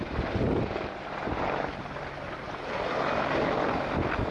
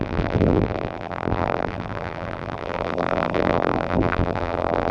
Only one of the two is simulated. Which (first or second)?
second